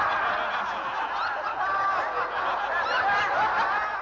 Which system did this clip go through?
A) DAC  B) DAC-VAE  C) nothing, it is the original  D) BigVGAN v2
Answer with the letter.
C